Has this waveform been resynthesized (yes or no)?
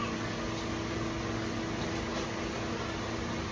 no